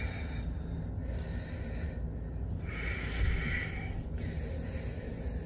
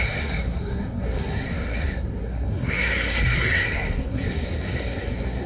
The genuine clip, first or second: first